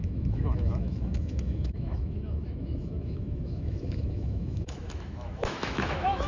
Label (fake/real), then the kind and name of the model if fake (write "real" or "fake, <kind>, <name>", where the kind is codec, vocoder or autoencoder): fake, autoencoder, DAC-VAE